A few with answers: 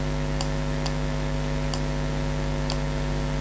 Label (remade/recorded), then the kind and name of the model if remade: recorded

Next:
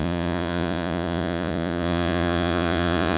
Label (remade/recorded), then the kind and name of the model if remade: remade, vocoder, Vocos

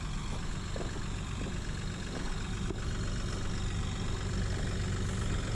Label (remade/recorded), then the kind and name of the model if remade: recorded